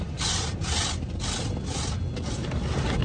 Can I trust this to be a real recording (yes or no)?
yes